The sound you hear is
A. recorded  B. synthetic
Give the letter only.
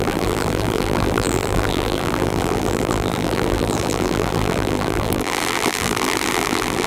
B